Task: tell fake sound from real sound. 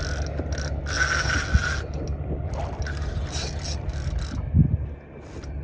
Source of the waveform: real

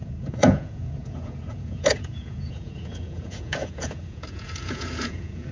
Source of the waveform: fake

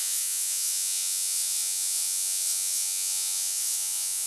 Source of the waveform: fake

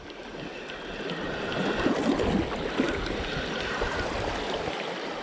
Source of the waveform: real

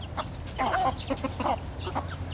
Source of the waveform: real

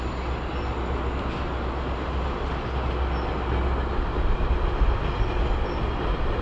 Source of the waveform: real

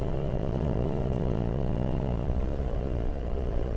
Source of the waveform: fake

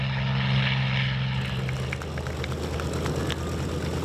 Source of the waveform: real